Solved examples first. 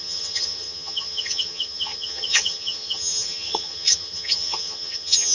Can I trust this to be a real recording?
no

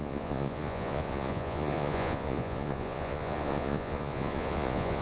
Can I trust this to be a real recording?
no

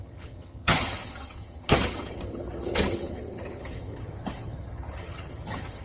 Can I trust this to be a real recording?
no